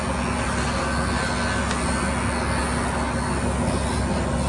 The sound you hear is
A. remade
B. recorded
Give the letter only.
B